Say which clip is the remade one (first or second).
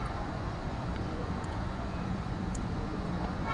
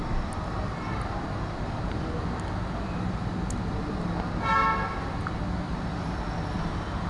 first